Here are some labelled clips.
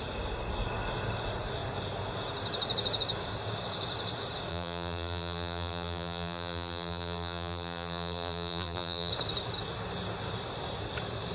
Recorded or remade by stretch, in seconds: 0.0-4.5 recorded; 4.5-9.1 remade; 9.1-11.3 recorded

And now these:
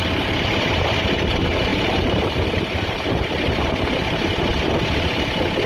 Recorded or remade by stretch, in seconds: 0.0-1.7 recorded; 1.7-3.6 remade; 3.6-5.7 recorded

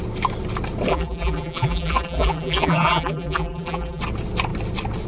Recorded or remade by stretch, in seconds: 0.0-0.9 recorded; 0.9-4.0 remade; 4.0-5.1 recorded

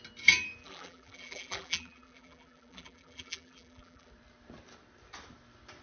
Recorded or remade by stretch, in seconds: 0.0-0.6 recorded; 0.6-4.1 remade; 4.1-5.8 recorded

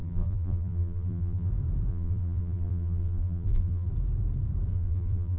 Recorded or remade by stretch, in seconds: 0.0-1.5 remade; 1.5-1.9 recorded; 1.9-3.9 remade; 3.9-4.7 recorded; 4.7-5.4 remade

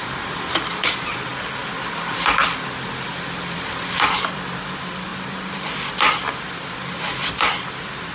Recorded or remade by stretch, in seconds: 0.0-1.3 remade; 1.3-3.1 recorded; 3.1-8.1 remade